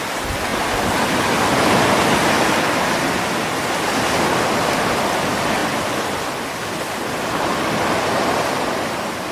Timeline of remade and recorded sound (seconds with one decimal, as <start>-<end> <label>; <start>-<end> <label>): 0.0-9.3 recorded